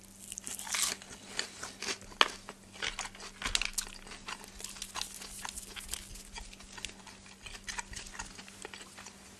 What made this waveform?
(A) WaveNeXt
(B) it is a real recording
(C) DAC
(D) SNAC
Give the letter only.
B